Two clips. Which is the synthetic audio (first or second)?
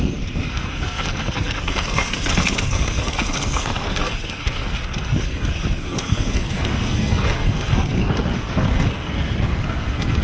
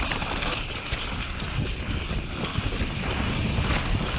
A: first